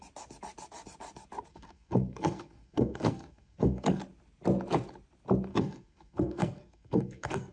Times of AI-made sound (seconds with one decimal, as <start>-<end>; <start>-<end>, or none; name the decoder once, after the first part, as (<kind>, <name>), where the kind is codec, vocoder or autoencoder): 1.5-4.0 (codec, SNAC); 5.5-7.5